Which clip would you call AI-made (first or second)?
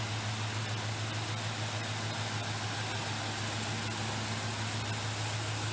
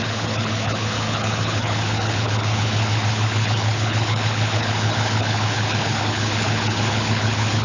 second